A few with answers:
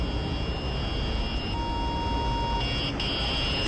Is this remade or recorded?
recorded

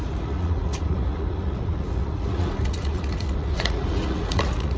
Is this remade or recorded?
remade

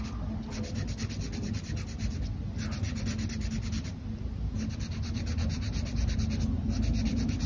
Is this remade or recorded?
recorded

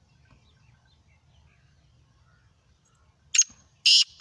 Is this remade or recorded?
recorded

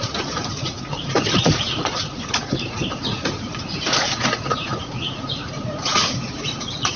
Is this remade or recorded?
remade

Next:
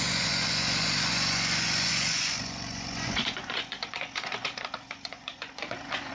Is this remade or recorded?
remade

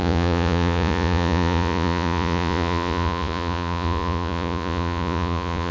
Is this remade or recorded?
remade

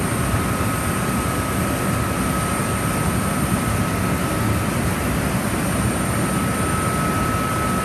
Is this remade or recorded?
recorded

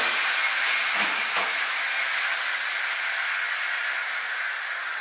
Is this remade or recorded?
recorded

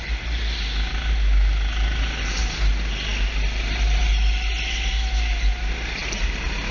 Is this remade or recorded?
recorded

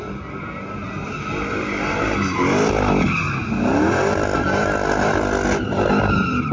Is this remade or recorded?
recorded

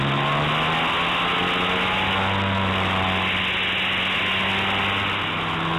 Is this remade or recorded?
recorded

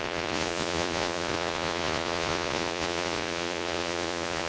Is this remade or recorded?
remade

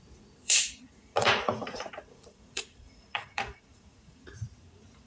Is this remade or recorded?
remade